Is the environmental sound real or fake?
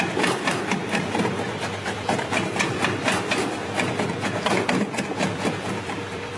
fake